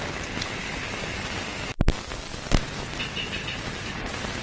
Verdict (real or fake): real